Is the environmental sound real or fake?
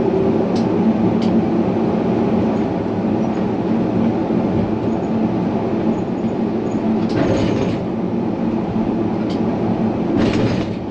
real